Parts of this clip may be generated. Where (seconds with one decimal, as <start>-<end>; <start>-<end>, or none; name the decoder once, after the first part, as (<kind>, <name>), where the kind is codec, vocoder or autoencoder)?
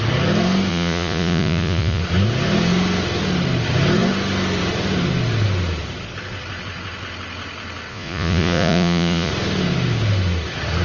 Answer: 0.7-2.0 (vocoder, Vocos); 7.9-9.3